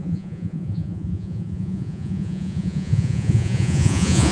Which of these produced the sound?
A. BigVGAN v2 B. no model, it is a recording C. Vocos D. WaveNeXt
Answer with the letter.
C